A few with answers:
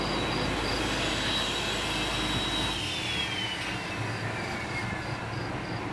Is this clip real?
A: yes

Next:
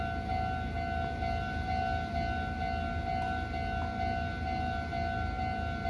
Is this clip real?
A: yes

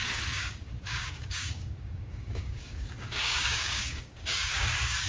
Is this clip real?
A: no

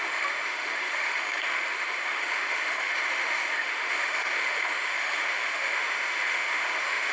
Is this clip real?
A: no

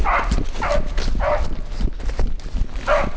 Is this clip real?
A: yes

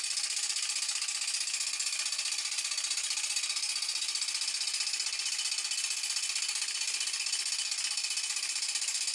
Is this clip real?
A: yes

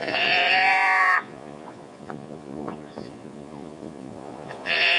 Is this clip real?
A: no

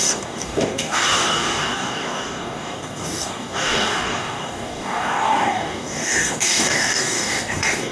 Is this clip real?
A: no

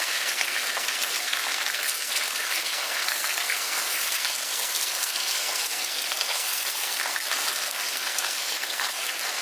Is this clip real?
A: no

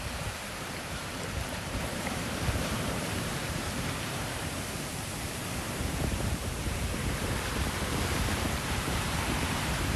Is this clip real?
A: no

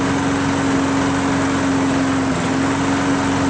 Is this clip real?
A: yes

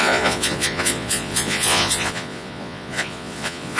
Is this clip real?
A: no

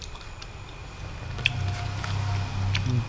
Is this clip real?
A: yes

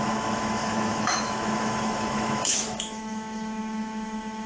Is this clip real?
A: no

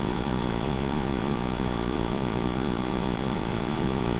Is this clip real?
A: no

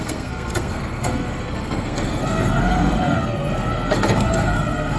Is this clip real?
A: no